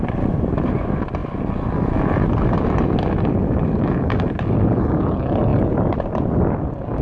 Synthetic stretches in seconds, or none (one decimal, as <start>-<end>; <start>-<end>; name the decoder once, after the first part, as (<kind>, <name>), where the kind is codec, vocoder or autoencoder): none